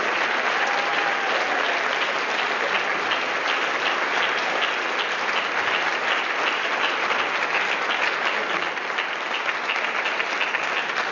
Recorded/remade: recorded